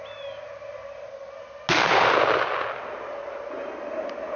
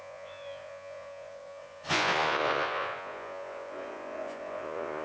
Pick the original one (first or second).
first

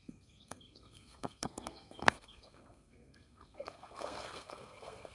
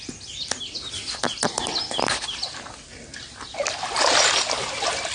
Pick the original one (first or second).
second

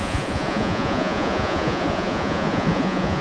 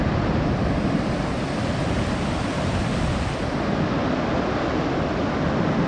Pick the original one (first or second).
second